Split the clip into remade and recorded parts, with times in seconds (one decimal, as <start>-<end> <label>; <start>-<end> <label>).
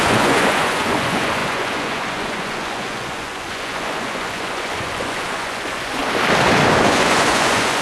0.0-6.0 remade; 6.0-6.8 recorded; 6.8-7.8 remade